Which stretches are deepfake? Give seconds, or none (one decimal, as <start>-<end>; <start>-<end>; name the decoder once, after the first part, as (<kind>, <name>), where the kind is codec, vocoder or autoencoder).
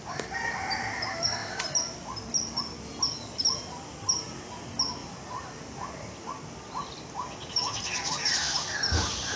none